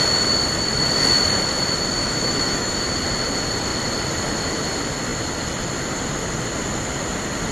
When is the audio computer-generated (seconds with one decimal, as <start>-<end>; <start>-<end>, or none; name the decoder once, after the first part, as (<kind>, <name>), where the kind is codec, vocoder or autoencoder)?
2.0-2.8 (autoencoder, DAC-VAE)